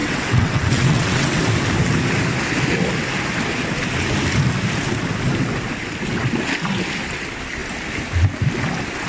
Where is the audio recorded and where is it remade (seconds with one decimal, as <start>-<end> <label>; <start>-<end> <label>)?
0.0-1.4 remade; 1.4-9.1 recorded